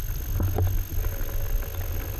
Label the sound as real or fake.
real